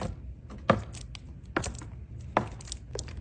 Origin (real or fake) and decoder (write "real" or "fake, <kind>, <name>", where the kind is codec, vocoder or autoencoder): real